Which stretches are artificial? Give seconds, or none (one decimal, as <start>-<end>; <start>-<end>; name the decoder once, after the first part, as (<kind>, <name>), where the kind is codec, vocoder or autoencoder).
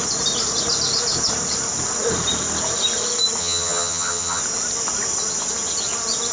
3.4-4.4 (vocoder, HiFi-GAN)